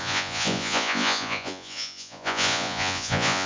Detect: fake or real fake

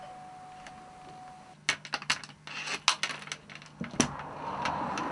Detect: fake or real real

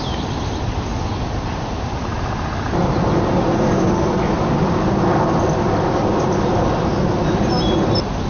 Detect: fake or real real